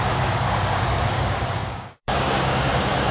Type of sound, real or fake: fake